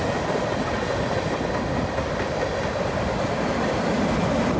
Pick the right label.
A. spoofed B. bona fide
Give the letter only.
B